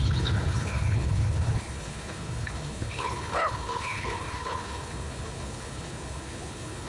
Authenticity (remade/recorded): remade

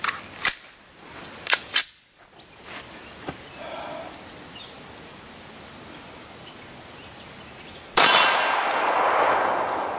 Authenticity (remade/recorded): recorded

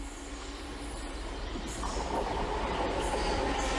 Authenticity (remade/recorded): recorded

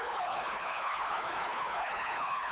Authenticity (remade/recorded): remade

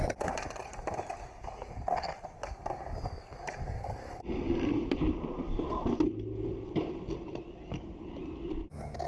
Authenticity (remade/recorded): recorded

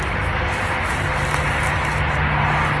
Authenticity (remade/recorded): recorded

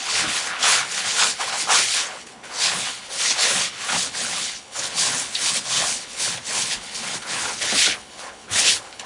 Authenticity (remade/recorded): remade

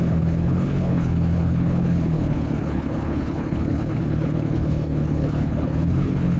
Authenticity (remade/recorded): remade